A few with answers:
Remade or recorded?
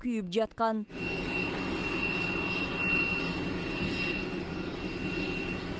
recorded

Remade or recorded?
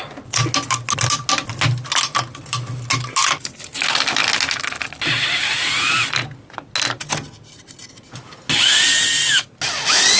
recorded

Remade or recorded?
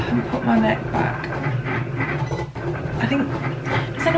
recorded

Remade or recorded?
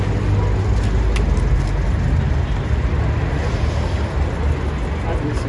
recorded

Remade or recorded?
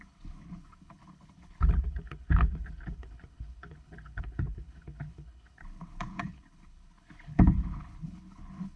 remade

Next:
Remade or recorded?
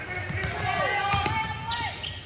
recorded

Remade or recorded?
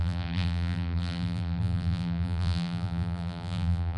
remade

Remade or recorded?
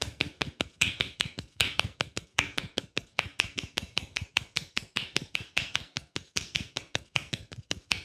remade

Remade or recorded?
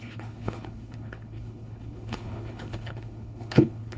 remade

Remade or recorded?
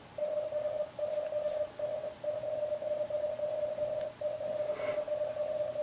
recorded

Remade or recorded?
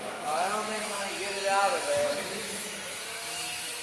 remade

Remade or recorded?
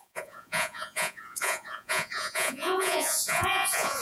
remade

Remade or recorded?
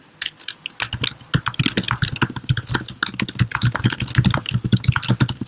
recorded